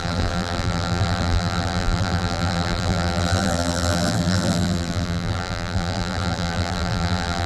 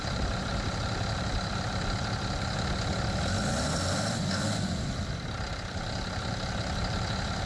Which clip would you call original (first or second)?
second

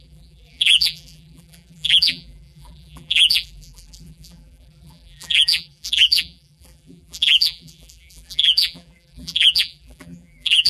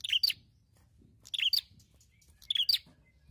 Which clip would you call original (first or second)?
second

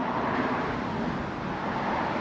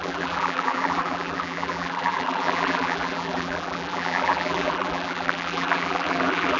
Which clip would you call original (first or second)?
first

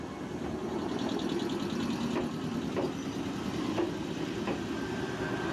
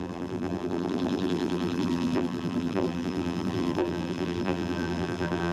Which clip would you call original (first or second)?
first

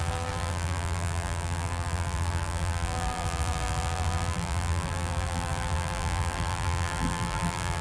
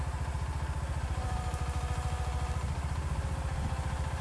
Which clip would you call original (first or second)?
second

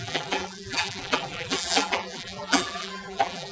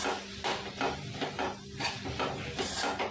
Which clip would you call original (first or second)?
second